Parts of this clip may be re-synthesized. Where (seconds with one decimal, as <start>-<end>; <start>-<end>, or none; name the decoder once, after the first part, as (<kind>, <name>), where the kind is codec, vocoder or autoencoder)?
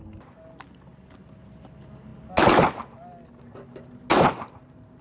none